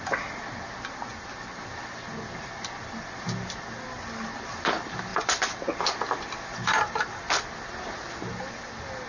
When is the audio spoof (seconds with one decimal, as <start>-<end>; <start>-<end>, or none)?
5.1-5.6